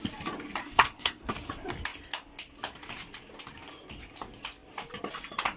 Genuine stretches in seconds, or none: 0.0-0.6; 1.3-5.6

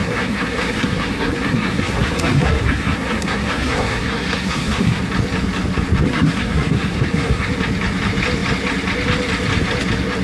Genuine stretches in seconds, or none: 5.0-6.1; 7.5-10.2

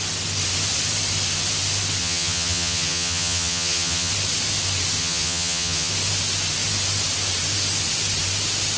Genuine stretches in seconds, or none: 0.0-2.0; 4.1-5.0; 5.9-8.8